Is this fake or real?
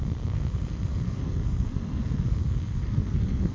fake